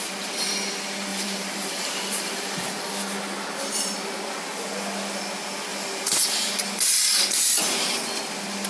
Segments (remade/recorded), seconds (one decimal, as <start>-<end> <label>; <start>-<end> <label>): 0.0-1.1 recorded; 1.1-2.8 remade; 2.8-5.7 recorded; 5.7-6.2 remade; 6.2-8.7 recorded